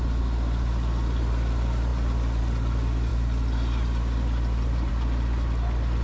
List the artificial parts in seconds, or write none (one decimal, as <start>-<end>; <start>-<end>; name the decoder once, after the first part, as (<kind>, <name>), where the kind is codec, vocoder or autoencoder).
1.9-2.4 (vocoder, BigVGAN v2); 3.1-4.9